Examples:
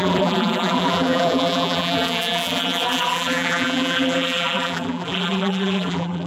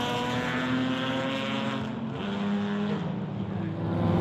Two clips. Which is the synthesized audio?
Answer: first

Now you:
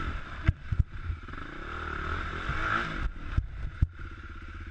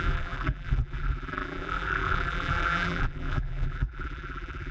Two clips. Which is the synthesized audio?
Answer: second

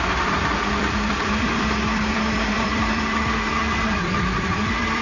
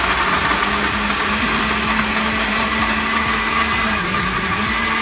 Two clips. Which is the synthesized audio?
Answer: first